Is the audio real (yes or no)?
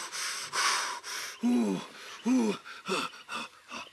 yes